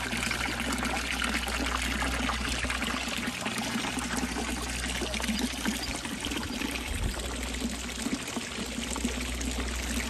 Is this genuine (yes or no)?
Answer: yes